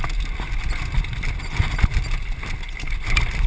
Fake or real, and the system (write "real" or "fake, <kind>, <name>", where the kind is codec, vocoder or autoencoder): real